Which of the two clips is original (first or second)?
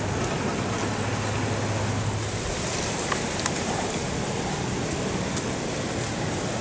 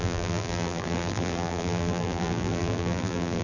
first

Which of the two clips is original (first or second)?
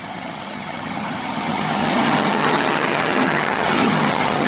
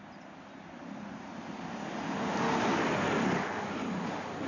second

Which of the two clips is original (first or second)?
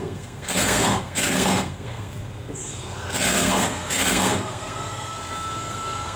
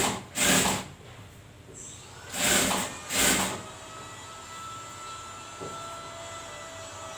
second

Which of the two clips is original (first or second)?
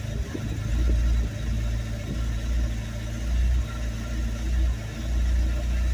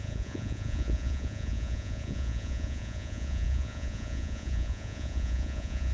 first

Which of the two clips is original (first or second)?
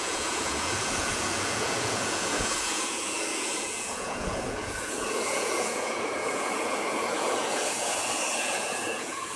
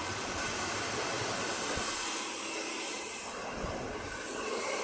second